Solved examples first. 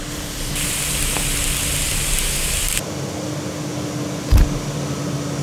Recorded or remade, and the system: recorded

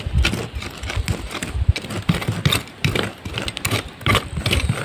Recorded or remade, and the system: recorded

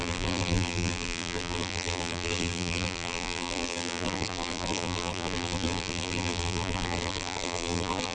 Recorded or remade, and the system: remade, vocoder, BigVGAN v2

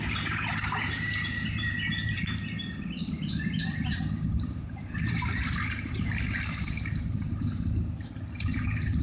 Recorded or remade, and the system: remade, vocoder, BigVGAN v2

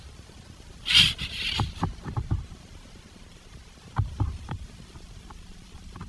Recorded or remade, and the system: remade, vocoder, BigVGAN v2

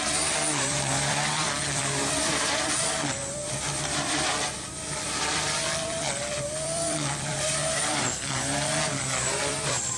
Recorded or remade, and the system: remade, vocoder, BigVGAN v2